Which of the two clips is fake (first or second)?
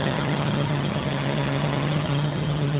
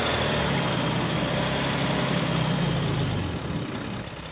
first